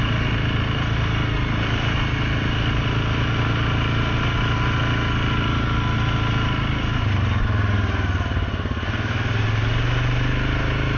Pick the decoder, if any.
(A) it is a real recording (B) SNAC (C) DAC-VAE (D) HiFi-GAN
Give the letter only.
A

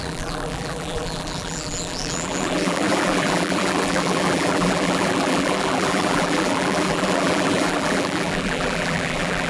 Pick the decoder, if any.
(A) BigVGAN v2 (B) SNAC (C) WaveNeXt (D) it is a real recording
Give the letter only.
A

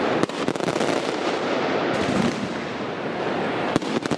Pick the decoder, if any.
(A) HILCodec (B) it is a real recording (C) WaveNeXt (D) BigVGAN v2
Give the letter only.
B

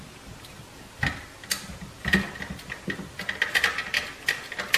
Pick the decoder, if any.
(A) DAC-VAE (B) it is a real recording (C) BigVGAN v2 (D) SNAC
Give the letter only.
B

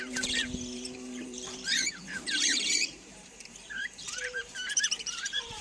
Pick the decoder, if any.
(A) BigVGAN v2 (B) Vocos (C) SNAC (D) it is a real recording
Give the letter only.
A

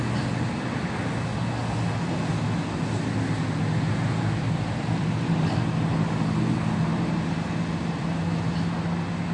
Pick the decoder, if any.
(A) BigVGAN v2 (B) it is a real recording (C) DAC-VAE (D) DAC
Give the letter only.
B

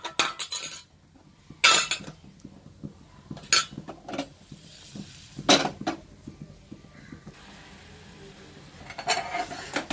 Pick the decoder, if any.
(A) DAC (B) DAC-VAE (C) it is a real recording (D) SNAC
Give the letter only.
C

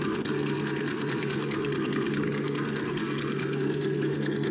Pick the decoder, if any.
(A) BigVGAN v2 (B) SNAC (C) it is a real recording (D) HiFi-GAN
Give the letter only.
B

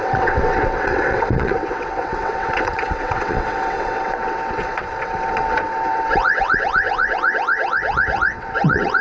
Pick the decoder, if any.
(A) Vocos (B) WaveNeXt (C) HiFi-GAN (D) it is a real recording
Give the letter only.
B